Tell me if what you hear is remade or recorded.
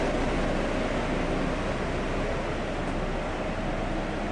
recorded